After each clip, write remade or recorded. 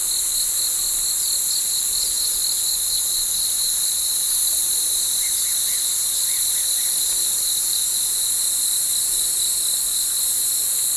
recorded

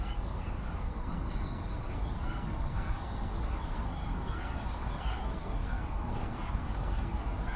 remade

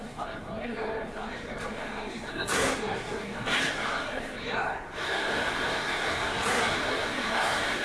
remade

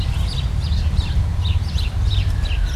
recorded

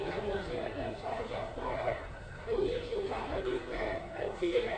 remade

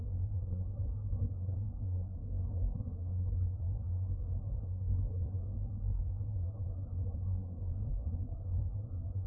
remade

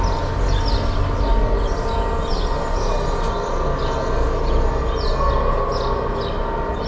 recorded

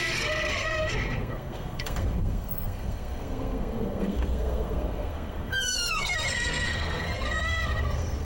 remade